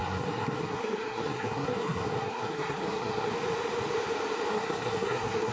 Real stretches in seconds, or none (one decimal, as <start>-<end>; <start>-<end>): 3.3-4.5

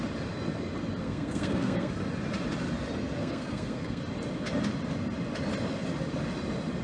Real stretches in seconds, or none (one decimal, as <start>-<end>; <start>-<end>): 0.0-1.0; 1.9-3.2; 4.0-6.8

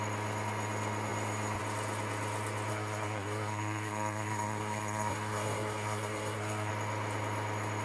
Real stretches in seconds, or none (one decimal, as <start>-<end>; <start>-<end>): 0.0-2.7; 6.7-7.8

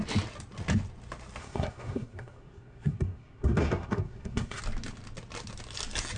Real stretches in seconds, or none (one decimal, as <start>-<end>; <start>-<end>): 0.0-1.4; 4.6-6.2

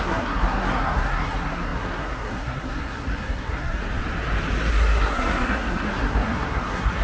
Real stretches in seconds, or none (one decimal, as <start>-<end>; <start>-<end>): 3.8-4.7

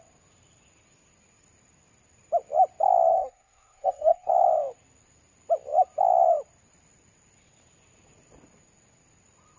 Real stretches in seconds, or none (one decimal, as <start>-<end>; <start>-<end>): 0.0-3.1; 4.3-9.6

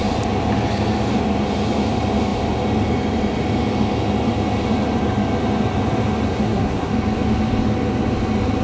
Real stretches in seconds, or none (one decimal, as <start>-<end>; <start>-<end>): 0.0-6.3; 6.9-8.6

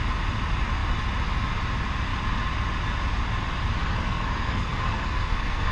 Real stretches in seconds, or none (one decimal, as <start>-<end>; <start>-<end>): 0.0-3.8